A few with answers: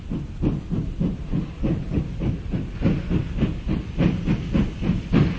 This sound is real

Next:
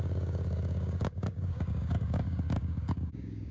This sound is fake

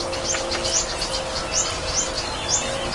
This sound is real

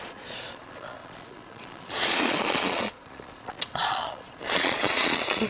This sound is fake